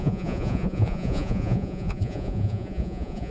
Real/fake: fake